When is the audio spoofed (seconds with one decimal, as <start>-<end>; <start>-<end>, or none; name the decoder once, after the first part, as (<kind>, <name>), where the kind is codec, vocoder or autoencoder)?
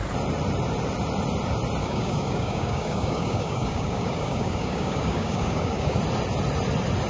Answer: 1.8-6.0 (codec, DAC)